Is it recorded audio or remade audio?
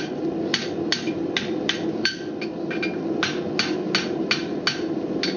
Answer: recorded